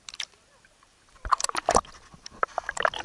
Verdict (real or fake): real